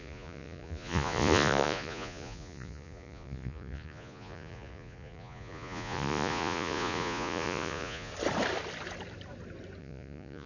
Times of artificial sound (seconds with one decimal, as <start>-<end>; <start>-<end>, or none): 0.0-8.1; 9.8-10.5